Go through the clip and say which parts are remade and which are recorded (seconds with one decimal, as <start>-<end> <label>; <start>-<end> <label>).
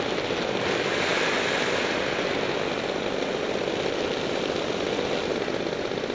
0.0-6.1 recorded